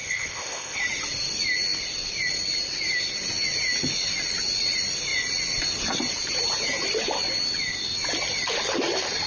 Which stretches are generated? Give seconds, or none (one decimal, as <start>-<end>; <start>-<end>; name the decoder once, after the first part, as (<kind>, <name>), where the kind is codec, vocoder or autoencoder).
0.0-0.8 (codec, ZipCodec)